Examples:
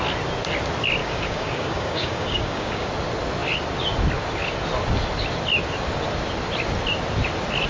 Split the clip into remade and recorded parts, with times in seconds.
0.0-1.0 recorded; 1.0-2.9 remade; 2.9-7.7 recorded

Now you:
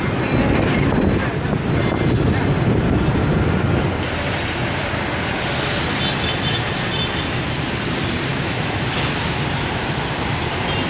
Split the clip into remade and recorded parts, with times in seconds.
0.0-8.3 recorded; 8.3-8.9 remade; 8.9-10.9 recorded

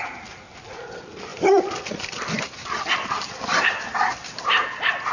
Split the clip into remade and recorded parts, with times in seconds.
0.0-1.3 recorded; 1.3-4.4 remade; 4.4-5.1 recorded

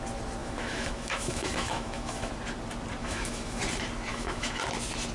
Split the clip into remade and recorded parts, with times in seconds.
0.0-0.4 recorded; 0.4-2.3 remade; 2.3-3.0 recorded; 3.0-3.6 remade; 3.6-4.1 recorded; 4.1-4.6 remade; 4.6-5.1 recorded

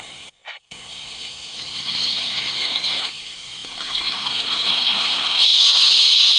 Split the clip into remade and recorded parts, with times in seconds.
0.0-6.4 remade

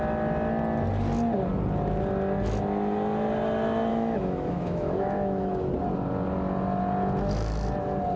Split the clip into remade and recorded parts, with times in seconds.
0.0-3.9 recorded; 3.9-5.7 remade; 5.7-8.2 recorded

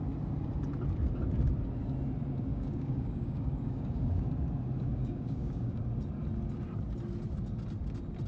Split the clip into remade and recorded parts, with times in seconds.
0.0-2.5 recorded; 2.5-4.3 remade; 4.3-4.9 recorded; 4.9-5.8 remade; 5.8-8.3 recorded

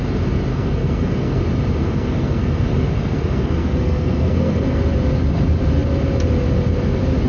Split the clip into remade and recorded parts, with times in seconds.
0.0-0.5 recorded; 0.5-1.4 remade; 1.4-1.8 recorded; 1.8-4.8 remade; 4.8-7.3 recorded